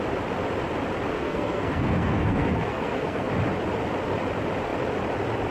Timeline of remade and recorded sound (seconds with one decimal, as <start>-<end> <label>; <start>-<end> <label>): 0.0-1.1 recorded; 1.1-3.3 remade; 3.3-5.5 recorded